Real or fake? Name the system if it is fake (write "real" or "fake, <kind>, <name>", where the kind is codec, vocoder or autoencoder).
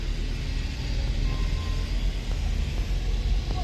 real